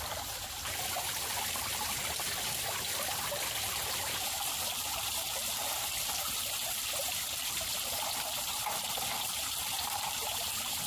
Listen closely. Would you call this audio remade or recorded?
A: remade